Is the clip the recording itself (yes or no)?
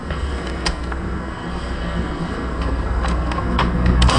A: no